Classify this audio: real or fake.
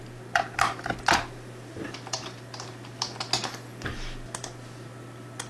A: real